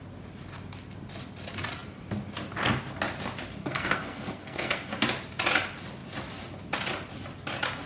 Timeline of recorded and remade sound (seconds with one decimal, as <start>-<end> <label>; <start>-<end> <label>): 0.0-3.6 recorded; 3.6-4.9 remade; 4.9-7.9 recorded

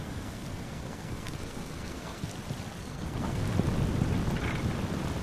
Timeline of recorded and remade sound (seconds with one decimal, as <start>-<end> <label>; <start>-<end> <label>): 0.0-2.3 remade; 2.3-2.8 recorded; 2.8-3.4 remade; 3.4-5.2 recorded

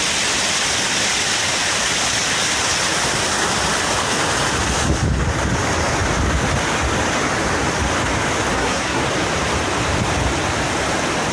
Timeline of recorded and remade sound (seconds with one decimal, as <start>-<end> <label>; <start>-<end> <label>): 0.0-8.5 recorded; 8.5-9.0 remade; 9.0-11.3 recorded

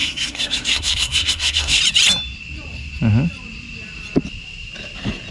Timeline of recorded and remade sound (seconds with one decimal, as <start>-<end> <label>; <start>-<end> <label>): 0.0-1.8 remade; 1.8-5.3 recorded